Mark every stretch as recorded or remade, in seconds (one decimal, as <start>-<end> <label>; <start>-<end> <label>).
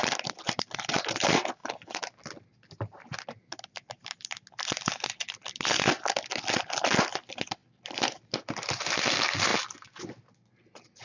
0.0-11.0 recorded